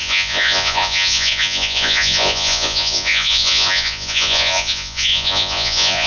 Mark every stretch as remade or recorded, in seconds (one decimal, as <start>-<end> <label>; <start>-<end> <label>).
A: 0.0-6.1 remade

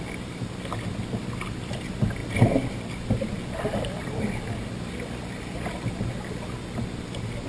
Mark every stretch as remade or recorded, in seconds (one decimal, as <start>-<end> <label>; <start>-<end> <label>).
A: 0.0-7.5 recorded